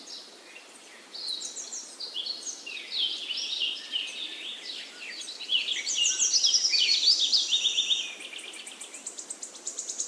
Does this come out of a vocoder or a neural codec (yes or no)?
no